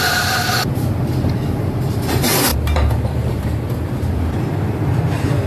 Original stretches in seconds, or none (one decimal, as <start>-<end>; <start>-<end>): none